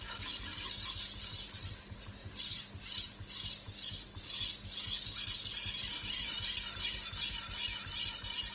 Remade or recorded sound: recorded